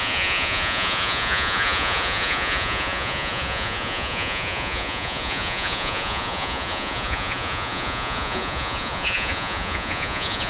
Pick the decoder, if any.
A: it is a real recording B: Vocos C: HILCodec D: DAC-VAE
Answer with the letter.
B